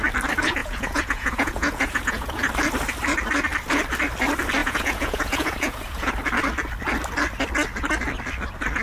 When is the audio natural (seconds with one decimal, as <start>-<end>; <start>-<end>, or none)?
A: 0.0-0.6; 2.5-4.6; 6.1-8.8